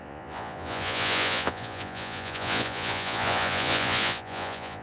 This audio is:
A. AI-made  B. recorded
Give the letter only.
A